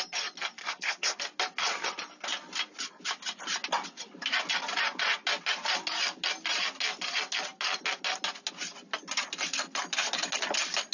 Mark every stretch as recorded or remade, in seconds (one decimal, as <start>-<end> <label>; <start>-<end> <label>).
0.0-0.6 recorded; 0.6-1.2 remade; 1.2-10.9 recorded